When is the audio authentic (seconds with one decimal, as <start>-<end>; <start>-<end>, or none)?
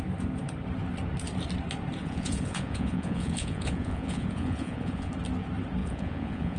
0.0-2.0; 5.1-5.8